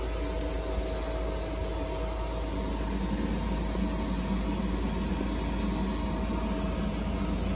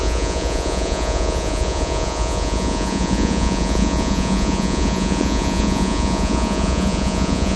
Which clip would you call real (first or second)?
first